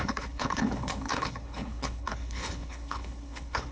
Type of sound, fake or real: fake